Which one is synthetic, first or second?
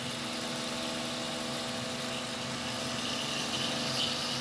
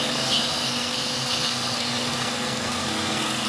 second